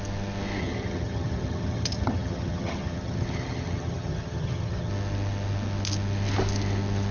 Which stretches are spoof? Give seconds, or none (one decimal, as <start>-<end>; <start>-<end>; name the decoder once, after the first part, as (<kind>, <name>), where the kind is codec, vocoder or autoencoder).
0.6-4.9 (vocoder, HiFi-GAN)